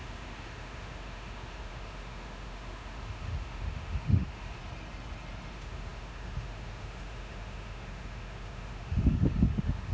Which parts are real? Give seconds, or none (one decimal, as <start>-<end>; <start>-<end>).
4.6-5.5